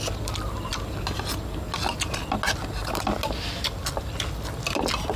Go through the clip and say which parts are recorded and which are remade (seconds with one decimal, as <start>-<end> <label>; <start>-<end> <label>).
0.0-5.2 recorded